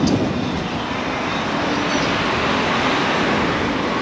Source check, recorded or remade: recorded